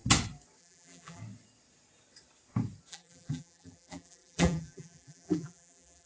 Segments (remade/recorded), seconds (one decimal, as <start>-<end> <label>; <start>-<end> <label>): 0.0-0.6 recorded; 0.6-1.2 remade; 1.2-2.9 recorded; 2.9-6.1 remade